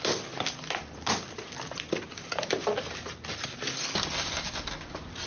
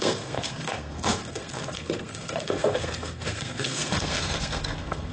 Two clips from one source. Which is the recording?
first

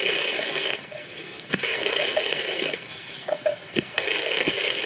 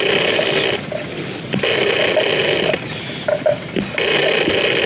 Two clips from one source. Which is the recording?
second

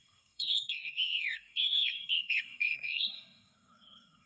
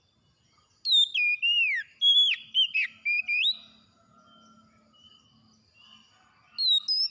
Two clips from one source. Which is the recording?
second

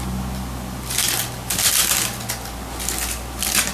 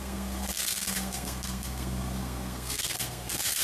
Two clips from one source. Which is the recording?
first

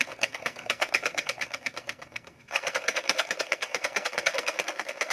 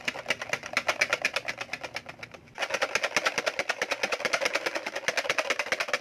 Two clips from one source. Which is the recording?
second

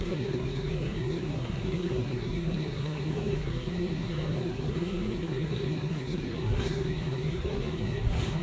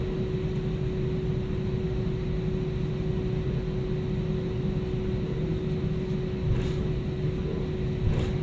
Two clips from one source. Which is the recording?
second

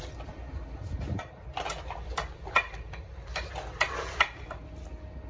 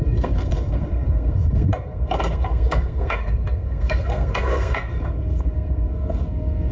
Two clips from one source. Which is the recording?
first